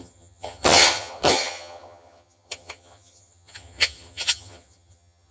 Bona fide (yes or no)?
no